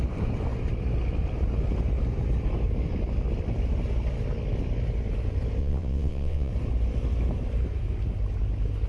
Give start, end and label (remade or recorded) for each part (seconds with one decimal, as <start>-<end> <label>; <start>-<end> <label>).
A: 0.0-5.6 recorded; 5.6-6.5 remade; 6.5-8.9 recorded